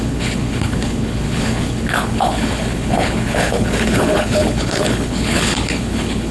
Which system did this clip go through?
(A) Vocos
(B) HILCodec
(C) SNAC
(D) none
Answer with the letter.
B